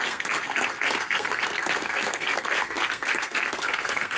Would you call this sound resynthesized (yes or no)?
yes